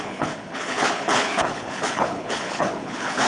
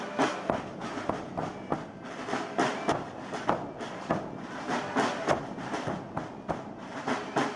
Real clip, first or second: second